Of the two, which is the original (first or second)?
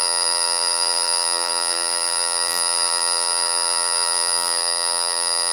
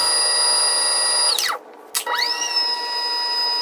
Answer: second